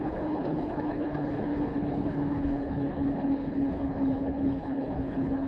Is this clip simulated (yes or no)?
yes